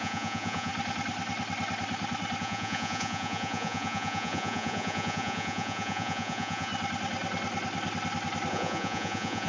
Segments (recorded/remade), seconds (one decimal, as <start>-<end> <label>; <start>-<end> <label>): 0.0-0.7 remade; 0.7-2.4 recorded; 2.4-6.7 remade; 6.7-8.5 recorded; 8.5-9.5 remade